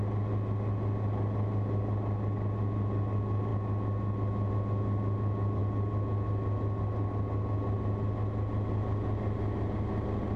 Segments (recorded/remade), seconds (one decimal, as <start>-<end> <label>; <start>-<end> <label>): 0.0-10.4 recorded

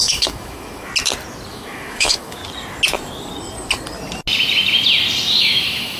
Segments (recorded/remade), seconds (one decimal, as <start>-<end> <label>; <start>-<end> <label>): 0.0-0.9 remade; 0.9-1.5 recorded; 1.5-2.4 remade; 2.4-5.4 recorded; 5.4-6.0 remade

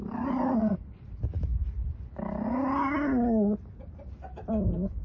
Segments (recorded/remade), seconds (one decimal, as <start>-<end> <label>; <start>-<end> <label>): 0.0-5.0 recorded

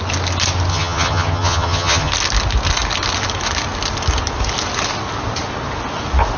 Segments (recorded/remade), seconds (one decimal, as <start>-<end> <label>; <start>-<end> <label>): 0.0-0.7 recorded; 0.7-2.1 remade; 2.1-6.4 recorded